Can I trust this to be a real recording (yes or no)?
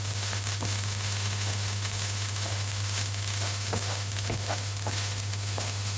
no